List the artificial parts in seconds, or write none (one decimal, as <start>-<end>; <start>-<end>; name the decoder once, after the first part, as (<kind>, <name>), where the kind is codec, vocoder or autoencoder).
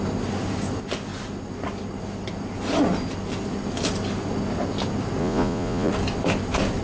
5.2-5.9 (vocoder, Vocos)